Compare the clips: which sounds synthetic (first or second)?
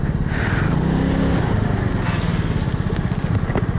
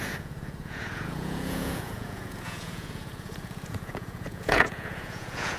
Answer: second